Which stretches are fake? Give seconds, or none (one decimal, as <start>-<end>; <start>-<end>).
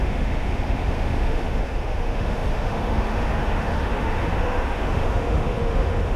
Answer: 0.0-6.2